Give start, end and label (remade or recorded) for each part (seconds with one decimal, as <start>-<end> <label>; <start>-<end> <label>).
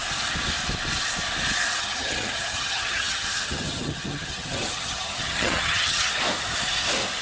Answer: 0.0-1.8 recorded; 1.8-6.1 remade; 6.1-7.2 recorded